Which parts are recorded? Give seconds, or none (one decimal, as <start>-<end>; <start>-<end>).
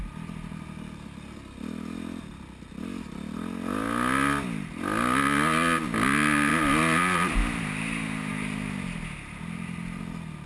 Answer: 0.0-10.5